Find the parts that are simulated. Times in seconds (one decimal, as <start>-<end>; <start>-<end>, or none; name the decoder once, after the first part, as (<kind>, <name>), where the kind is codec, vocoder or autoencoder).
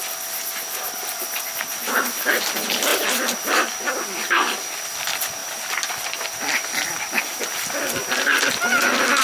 2.9-3.8 (vocoder, BigVGAN v2); 5.4-7.2